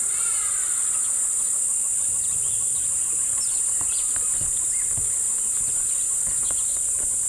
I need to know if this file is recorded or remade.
remade